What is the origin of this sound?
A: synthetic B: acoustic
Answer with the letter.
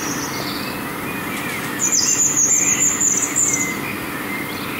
B